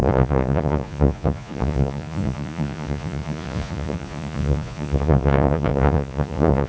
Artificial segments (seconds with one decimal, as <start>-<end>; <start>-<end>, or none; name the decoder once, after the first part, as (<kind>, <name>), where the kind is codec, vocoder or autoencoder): 0.0-6.7 (vocoder, Vocos)